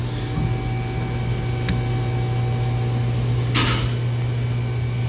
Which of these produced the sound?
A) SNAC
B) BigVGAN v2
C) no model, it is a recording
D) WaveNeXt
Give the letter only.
C